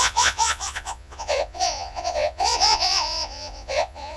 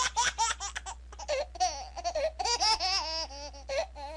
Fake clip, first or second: first